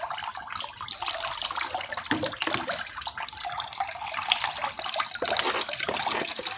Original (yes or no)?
yes